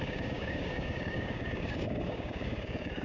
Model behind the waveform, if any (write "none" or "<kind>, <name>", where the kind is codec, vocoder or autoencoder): codec, DAC